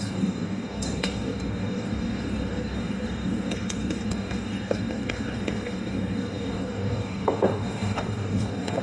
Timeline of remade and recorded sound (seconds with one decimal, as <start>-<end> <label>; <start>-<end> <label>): 0.0-8.8 remade